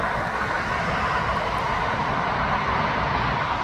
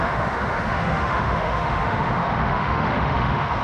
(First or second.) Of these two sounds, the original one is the first